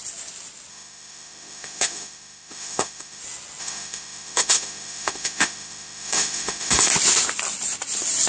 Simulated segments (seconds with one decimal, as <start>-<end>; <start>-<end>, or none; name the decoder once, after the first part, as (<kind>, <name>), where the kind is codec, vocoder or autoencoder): 0.7-3.2 (autoencoder, DAC-VAE); 3.6-6.9